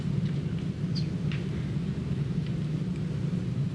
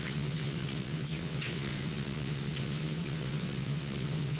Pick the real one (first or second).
first